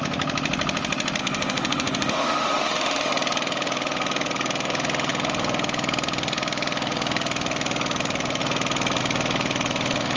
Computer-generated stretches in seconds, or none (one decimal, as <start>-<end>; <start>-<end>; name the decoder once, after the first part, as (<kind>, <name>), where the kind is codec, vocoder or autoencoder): 1.2-3.1 (autoencoder, DAC-VAE)